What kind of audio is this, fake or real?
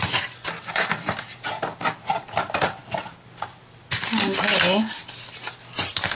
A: real